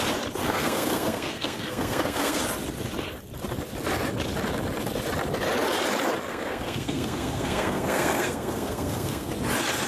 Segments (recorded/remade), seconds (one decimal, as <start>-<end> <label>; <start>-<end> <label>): 0.0-0.4 recorded; 0.4-2.4 remade; 2.4-6.3 recorded; 6.3-9.3 remade; 9.3-9.9 recorded